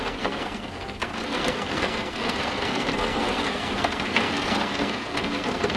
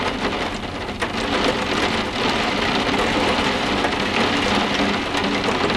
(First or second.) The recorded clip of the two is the second